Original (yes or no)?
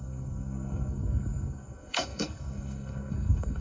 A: no